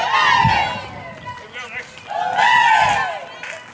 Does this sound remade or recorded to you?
recorded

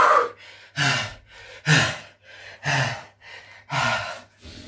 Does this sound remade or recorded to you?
recorded